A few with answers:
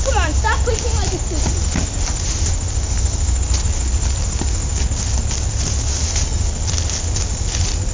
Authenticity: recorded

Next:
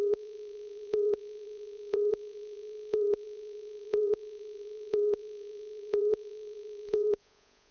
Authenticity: remade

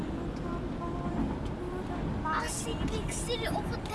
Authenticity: recorded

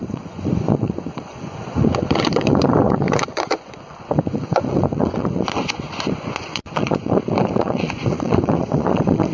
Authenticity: remade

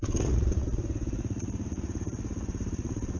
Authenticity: remade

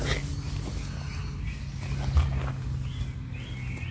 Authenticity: recorded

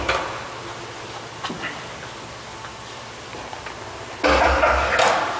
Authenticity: recorded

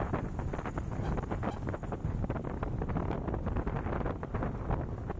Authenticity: recorded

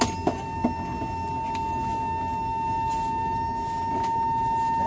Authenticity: recorded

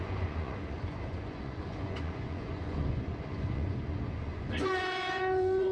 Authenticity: remade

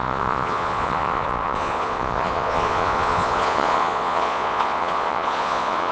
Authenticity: remade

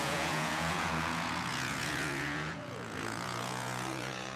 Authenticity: remade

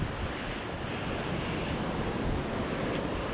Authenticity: recorded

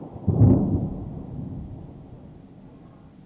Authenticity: recorded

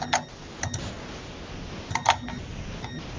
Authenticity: recorded